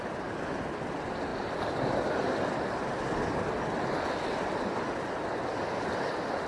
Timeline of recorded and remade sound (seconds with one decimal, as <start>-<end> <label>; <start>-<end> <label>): 0.0-6.5 recorded